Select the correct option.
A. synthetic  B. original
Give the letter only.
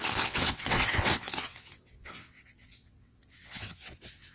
A